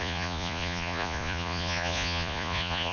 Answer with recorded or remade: remade